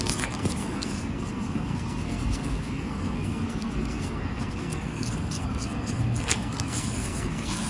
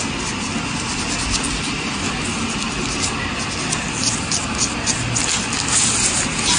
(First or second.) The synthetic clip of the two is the first